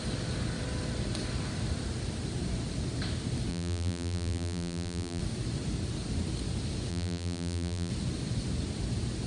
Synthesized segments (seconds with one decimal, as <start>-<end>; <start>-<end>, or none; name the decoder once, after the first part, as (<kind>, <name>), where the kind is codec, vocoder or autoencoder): 3.5-5.2 (vocoder, BigVGAN v2); 6.9-7.9